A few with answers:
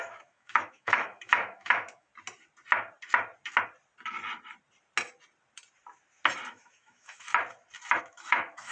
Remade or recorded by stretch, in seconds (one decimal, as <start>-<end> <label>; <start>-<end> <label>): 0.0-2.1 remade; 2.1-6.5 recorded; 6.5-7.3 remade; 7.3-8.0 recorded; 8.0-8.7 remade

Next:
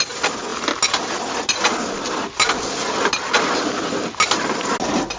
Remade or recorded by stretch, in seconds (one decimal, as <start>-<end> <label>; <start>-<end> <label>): 0.0-5.2 recorded

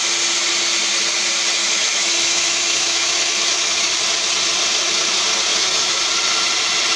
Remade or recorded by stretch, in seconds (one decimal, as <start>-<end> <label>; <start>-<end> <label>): 0.0-1.6 recorded; 1.6-3.9 remade; 3.9-5.5 recorded; 5.5-6.0 remade; 6.0-7.0 recorded

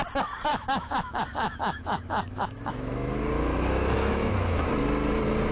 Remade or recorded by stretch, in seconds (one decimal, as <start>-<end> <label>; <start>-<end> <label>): 0.0-0.5 recorded; 0.5-3.2 remade; 3.2-4.2 recorded; 4.2-4.7 remade; 4.7-5.5 recorded